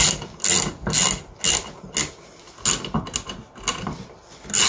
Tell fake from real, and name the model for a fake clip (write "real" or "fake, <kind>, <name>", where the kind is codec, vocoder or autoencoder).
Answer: real